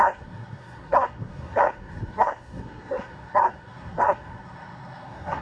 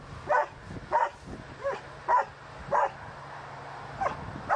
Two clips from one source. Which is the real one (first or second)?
second